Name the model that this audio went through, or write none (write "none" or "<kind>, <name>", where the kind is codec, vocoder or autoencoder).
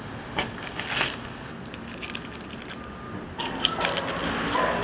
none